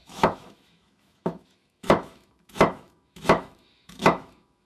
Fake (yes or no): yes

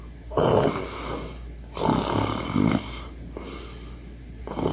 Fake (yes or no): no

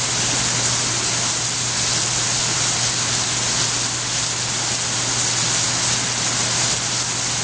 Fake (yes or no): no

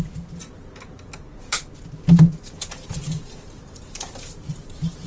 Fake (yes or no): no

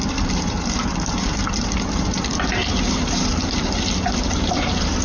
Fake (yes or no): yes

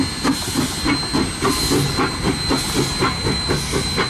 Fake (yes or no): no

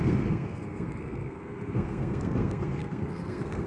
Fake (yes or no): yes